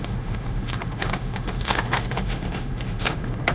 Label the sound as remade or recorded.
remade